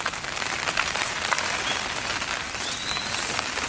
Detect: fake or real fake